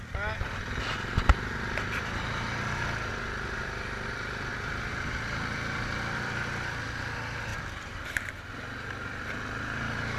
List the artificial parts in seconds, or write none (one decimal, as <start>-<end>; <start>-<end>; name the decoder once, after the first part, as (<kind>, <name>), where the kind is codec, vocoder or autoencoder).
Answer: 3.1-7.0 (vocoder, BigVGAN v2); 7.5-8.3